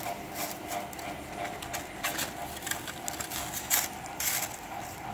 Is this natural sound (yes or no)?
yes